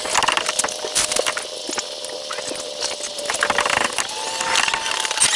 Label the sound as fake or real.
real